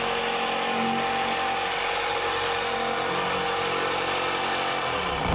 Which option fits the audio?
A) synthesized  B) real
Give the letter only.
B